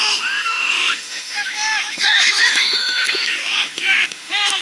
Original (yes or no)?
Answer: no